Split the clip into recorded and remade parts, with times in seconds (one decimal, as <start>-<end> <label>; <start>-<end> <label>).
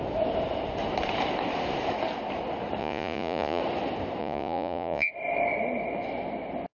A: 0.0-2.8 recorded; 2.8-3.6 remade; 3.6-4.2 recorded; 4.2-5.1 remade; 5.1-6.7 recorded